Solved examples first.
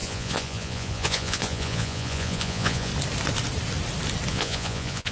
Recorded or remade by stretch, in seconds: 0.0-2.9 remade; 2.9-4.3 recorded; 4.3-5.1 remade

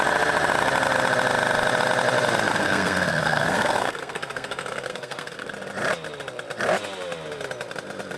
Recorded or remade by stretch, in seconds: 0.0-2.5 recorded; 2.5-5.5 remade; 5.5-8.2 recorded

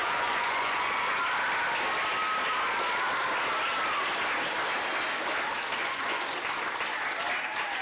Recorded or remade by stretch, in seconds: 0.0-1.1 remade; 1.1-5.8 recorded; 5.8-6.3 remade; 6.3-7.8 recorded

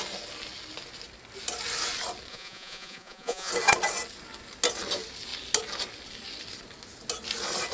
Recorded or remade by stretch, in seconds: 0.0-2.3 recorded; 2.3-3.5 remade; 3.5-7.7 recorded

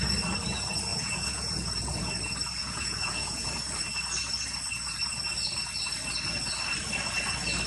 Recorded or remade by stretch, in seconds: 0.0-0.9 recorded; 0.9-2.1 remade; 2.1-2.6 recorded; 2.6-3.5 remade; 3.5-7.7 recorded